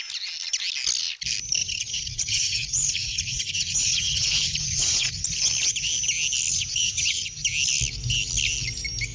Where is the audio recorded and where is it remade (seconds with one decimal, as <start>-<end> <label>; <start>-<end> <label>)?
0.0-1.6 recorded; 1.6-5.1 remade; 5.1-6.5 recorded; 6.5-7.4 remade; 7.4-9.1 recorded